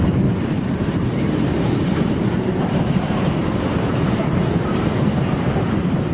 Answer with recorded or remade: remade